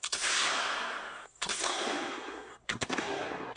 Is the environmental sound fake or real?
fake